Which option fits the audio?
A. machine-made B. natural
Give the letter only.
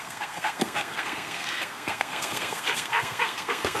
A